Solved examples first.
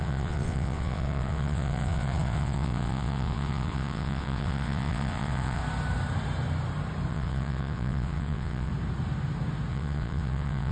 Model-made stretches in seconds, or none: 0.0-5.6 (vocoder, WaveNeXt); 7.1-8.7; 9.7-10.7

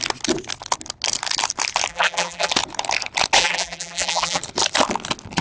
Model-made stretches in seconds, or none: 1.9-2.5 (vocoder, BigVGAN v2); 3.4-4.4

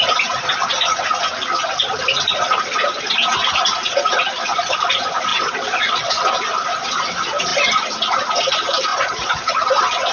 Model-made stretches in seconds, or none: 5.3-6.1 (vocoder, Vocos); 8.9-9.5

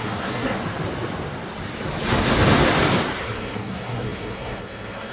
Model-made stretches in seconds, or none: 0.0-0.6 (codec, SNAC); 3.2-5.1

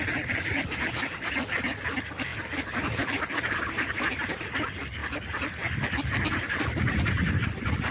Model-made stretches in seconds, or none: 0.0-7.9 (vocoder, BigVGAN v2)

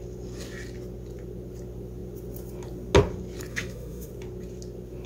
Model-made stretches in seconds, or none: 3.5-4.1 (autoencoder, DAC-VAE)

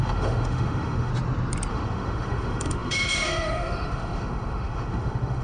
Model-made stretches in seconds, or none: 0.0-1.1 (autoencoder, DAC-VAE); 1.7-5.4

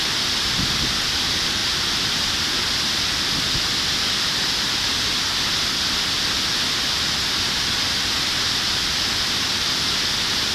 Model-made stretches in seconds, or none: none